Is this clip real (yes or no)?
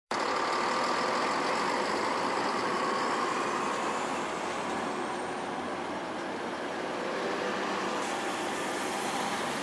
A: no